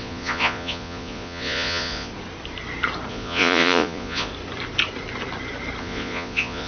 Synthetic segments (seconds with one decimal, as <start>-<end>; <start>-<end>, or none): 0.0-2.1; 3.1-4.3; 5.8-6.7